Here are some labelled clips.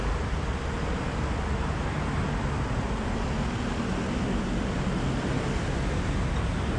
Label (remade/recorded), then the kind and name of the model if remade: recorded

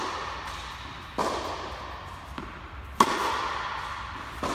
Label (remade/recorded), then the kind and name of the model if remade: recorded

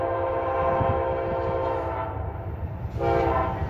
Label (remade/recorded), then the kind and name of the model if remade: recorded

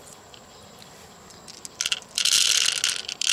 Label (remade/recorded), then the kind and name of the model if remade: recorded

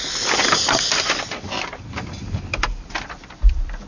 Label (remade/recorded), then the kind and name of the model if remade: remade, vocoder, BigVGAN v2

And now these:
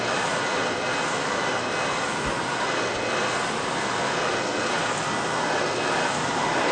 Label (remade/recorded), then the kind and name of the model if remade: recorded